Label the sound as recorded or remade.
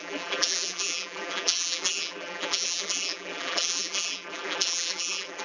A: remade